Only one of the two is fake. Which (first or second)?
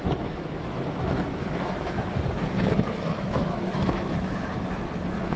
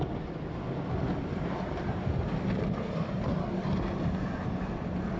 first